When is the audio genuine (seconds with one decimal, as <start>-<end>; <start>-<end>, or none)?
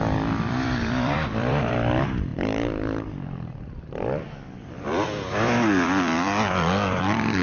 none